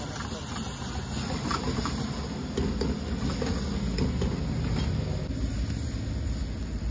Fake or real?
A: real